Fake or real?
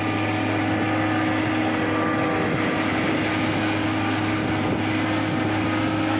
real